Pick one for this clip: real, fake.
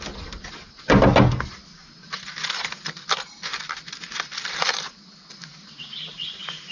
real